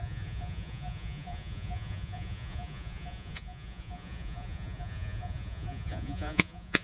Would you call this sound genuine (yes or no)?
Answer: no